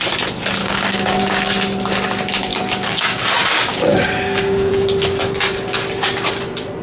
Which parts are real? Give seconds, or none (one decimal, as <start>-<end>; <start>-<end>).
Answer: 0.0-0.6; 1.5-2.5; 3.2-3.7; 4.7-6.8